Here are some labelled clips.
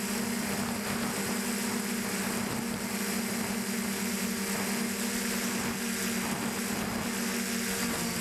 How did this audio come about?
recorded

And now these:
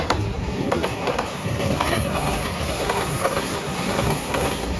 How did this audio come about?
remade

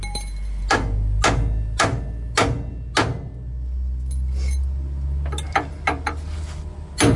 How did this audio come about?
recorded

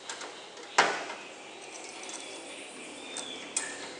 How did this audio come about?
recorded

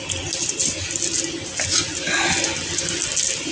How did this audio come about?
recorded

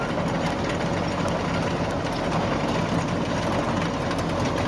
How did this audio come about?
recorded